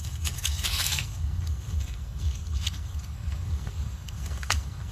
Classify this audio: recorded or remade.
remade